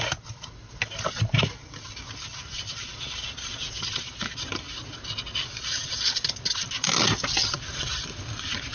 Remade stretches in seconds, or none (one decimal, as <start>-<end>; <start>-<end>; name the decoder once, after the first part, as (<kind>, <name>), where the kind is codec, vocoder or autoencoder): none